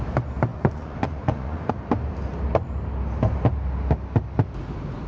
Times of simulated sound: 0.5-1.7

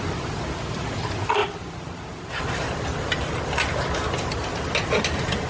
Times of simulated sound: none

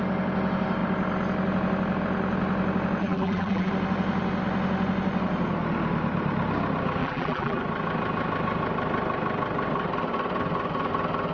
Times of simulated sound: 3.0-3.7; 7.0-7.6

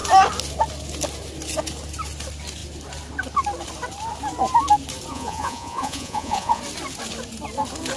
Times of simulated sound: 5.1-6.6

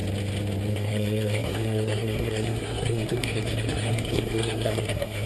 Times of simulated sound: 0.7-5.3